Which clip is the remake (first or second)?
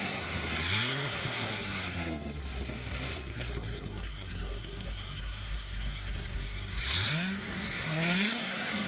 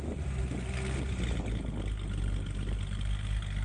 first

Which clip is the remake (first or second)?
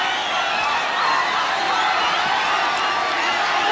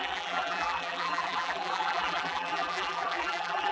second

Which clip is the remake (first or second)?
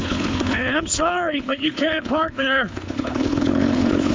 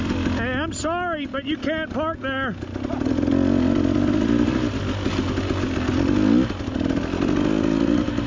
first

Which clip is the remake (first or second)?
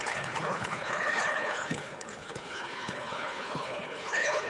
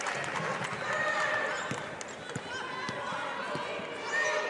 first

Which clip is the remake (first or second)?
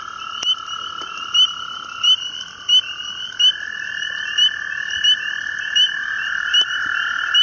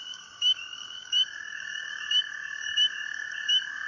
second